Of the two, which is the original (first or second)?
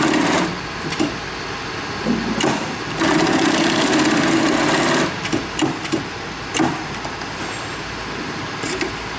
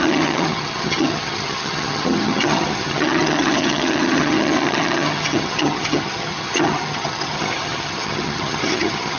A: first